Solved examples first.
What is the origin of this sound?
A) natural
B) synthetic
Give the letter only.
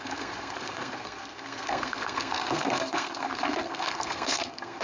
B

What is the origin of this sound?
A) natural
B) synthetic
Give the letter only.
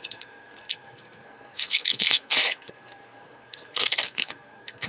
B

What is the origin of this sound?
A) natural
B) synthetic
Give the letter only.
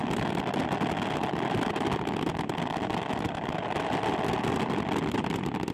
A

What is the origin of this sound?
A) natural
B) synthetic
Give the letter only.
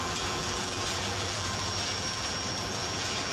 B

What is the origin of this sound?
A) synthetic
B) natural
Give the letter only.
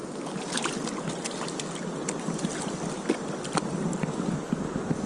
B